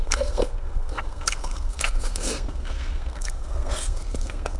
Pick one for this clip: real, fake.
fake